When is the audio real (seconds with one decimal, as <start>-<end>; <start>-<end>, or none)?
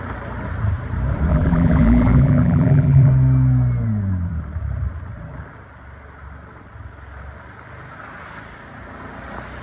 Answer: 0.0-1.3; 3.1-9.6